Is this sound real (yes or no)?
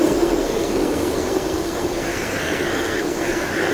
no